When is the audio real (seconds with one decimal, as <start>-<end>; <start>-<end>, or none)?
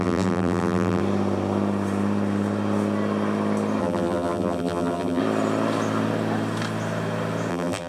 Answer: 1.0-3.8; 5.2-7.5